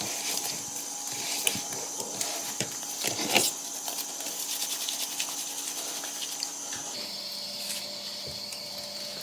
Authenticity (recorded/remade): recorded